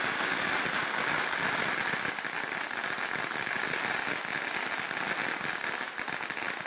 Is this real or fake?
real